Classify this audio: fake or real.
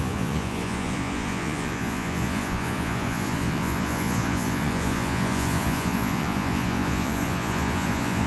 fake